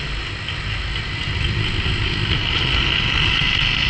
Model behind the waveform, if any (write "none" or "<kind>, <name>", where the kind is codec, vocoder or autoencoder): none